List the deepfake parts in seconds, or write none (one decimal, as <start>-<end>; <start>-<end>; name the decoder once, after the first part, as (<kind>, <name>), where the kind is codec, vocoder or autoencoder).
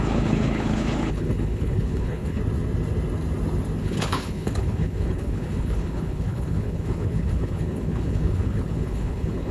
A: 0.0-2.4 (codec, HILCodec); 3.8-9.5